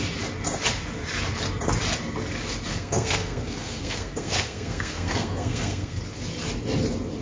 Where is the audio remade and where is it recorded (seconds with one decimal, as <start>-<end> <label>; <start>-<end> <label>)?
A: 0.0-2.7 recorded; 2.7-6.0 remade; 6.0-7.2 recorded